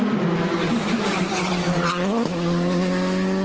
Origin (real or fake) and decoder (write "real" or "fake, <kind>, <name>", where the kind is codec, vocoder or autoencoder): real